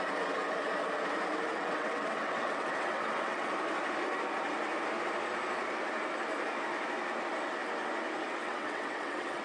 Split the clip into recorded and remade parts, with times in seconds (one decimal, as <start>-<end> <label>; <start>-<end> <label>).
0.0-1.5 recorded; 1.5-3.5 remade; 3.5-8.4 recorded; 8.4-9.4 remade